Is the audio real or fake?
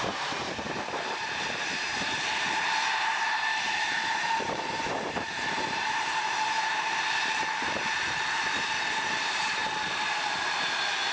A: fake